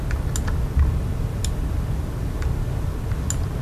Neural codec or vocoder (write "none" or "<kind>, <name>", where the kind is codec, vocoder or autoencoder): none